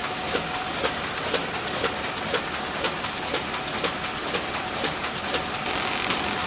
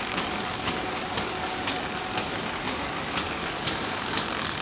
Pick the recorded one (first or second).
first